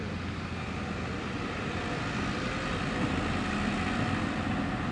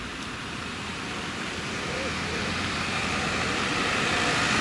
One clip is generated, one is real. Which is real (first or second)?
first